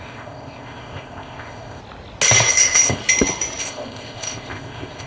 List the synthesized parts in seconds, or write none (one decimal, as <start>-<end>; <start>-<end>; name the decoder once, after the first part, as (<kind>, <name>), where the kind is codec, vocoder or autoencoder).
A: 0.0-1.8 (codec, ZipCodec); 2.5-3.0; 3.6-5.1